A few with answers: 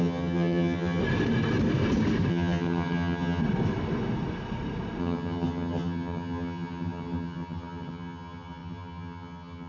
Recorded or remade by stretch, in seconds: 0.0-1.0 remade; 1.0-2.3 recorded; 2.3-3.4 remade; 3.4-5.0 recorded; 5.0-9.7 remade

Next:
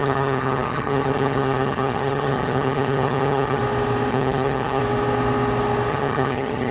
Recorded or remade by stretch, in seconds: 0.0-3.6 remade; 3.6-4.1 recorded; 4.1-4.8 remade; 4.8-5.9 recorded; 5.9-6.7 remade